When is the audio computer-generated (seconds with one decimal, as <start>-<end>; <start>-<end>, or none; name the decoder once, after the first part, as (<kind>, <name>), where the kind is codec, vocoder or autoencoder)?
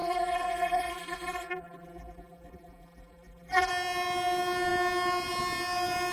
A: 0.0-3.7 (vocoder, BigVGAN v2)